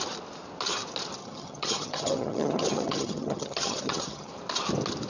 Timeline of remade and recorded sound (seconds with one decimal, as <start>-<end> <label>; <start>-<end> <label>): 0.0-1.2 recorded; 1.2-4.3 remade; 4.3-5.1 recorded